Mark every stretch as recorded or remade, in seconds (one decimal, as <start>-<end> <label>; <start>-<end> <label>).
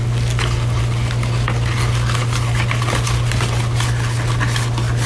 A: 0.0-5.1 recorded